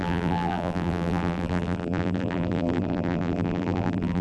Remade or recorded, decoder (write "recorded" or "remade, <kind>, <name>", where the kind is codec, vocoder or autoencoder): remade, vocoder, BigVGAN v2